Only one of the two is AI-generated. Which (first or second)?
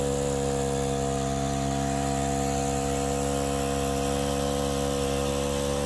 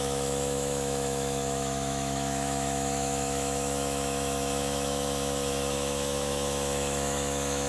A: second